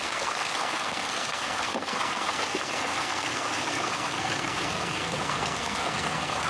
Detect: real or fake fake